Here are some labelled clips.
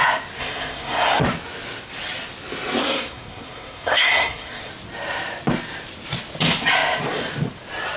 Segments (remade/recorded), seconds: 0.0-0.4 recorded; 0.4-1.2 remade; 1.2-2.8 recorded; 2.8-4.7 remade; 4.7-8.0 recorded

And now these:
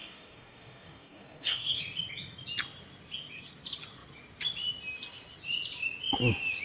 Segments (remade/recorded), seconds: 0.0-1.8 remade; 1.8-6.6 recorded